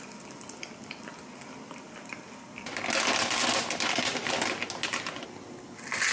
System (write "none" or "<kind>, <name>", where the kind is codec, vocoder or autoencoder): none